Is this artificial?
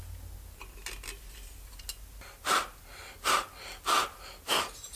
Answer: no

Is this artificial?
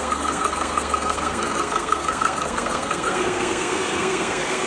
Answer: yes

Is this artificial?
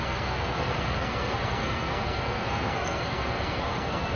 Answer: yes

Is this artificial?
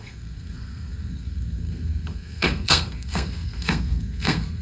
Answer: yes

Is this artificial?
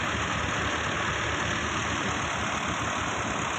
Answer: no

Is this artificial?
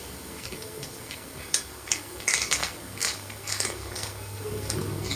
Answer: yes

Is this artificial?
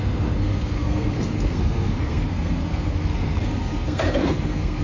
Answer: yes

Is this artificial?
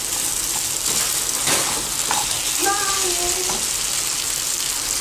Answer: no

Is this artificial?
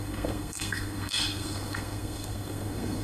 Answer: yes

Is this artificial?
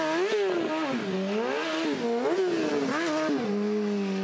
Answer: no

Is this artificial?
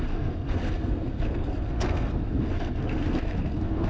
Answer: yes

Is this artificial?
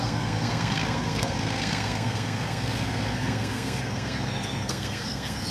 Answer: yes